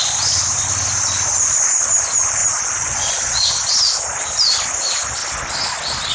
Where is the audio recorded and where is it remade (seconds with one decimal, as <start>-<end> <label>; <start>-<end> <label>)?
0.0-2.4 recorded; 2.4-3.5 remade; 3.5-6.1 recorded